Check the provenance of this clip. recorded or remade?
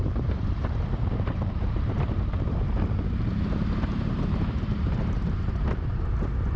remade